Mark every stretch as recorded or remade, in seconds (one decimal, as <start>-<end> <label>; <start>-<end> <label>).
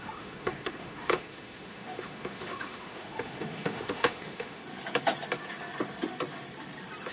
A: 0.0-4.6 remade; 4.6-7.1 recorded